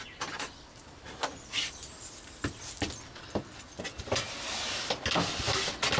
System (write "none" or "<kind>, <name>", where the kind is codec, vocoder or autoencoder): none